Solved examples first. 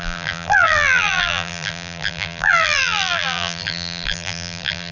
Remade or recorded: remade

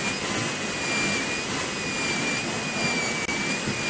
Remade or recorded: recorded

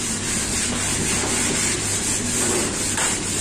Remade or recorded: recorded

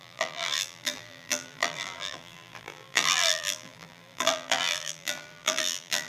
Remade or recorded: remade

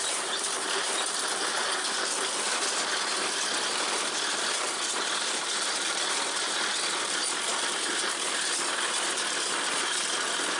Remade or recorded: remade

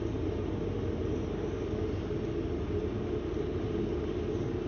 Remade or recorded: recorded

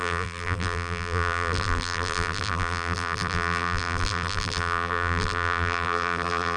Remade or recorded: remade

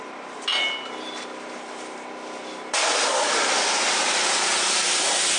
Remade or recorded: recorded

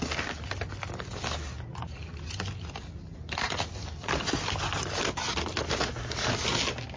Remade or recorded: recorded